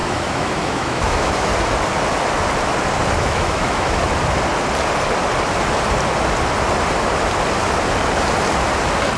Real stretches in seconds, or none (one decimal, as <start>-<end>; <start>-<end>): 1.5-3.2; 4.0-9.2